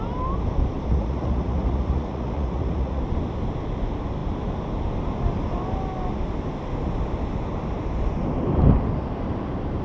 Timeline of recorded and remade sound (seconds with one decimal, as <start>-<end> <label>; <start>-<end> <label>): 0.0-0.9 recorded; 0.9-3.0 remade; 3.0-9.8 recorded